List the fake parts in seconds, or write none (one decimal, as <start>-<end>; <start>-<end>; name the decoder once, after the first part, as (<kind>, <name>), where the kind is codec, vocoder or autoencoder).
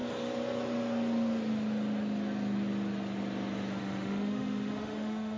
3.8-5.4 (autoencoder, DAC-VAE)